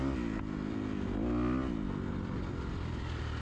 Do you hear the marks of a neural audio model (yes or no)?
no